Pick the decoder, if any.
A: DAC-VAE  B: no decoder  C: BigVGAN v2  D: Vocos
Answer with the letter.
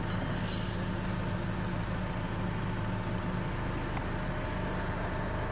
B